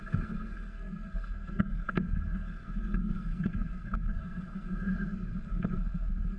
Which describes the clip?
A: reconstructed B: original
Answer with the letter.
A